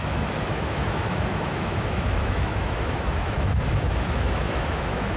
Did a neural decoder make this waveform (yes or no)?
yes